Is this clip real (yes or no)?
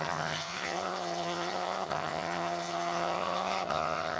no